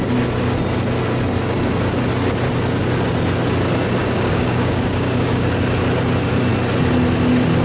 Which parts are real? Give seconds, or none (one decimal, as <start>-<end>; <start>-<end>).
0.0-4.0; 5.5-7.6